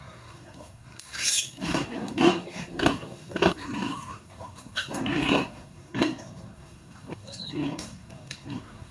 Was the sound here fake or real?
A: fake